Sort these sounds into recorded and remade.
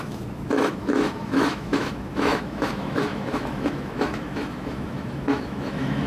remade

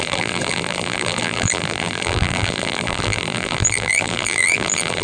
remade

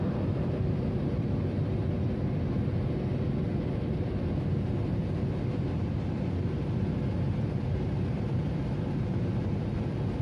recorded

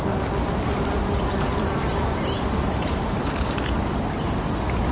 recorded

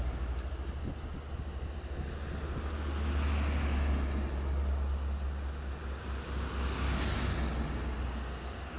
recorded